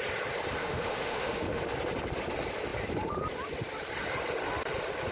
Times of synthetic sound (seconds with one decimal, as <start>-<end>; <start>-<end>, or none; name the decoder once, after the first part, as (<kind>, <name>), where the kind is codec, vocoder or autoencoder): 0.6-1.6 (autoencoder, DAC-VAE)